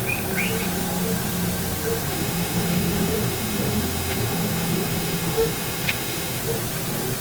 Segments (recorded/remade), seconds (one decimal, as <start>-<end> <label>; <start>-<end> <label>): 0.0-2.1 recorded; 2.1-6.4 remade; 6.4-7.2 recorded